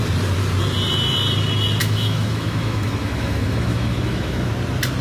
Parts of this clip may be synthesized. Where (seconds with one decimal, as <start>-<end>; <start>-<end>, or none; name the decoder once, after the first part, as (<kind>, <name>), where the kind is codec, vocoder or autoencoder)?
1.8-4.5 (autoencoder, DAC-VAE)